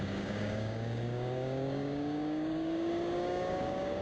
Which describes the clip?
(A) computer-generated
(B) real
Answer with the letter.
A